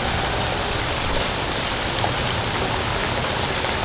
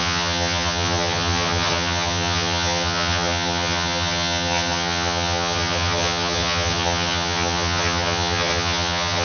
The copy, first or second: second